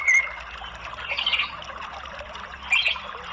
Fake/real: real